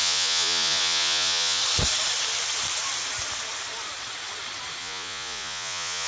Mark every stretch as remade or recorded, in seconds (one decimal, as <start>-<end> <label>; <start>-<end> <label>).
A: 0.0-1.6 remade; 1.6-4.8 recorded; 4.8-6.1 remade

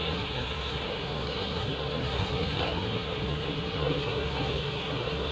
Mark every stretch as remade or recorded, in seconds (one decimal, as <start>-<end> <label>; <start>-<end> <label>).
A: 0.0-5.3 remade

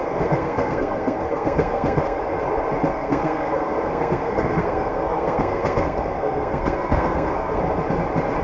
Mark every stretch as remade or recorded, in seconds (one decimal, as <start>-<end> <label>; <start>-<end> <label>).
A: 0.0-2.2 remade; 2.2-2.9 recorded; 2.9-7.6 remade; 7.6-8.4 recorded